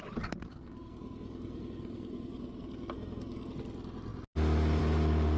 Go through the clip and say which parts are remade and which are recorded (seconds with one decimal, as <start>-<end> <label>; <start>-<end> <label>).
0.0-0.5 recorded; 0.5-3.5 remade; 3.5-5.4 recorded